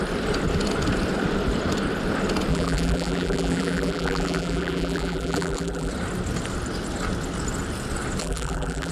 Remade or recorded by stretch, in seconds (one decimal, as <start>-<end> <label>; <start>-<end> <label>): 0.0-2.5 recorded; 2.5-5.9 remade; 5.9-8.2 recorded; 8.2-8.9 remade